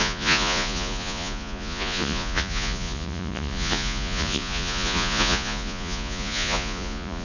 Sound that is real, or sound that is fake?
fake